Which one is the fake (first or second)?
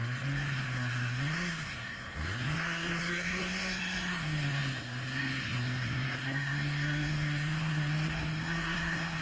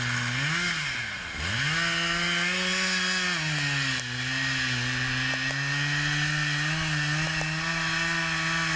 first